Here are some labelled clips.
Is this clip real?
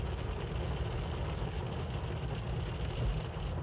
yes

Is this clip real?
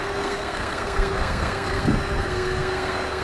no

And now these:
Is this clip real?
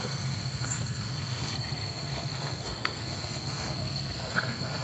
no